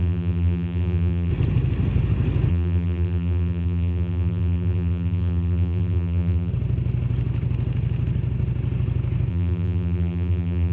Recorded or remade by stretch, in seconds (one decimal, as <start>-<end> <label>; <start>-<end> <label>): 0.0-1.3 remade; 1.3-2.5 recorded; 2.5-6.5 remade; 6.5-9.3 recorded; 9.3-10.7 remade